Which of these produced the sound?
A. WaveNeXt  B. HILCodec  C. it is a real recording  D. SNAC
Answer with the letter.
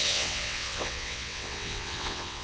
A